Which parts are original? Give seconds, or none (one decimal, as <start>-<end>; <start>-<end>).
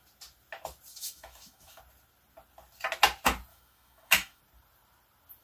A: 0.0-0.9; 1.8-3.5; 4.4-5.4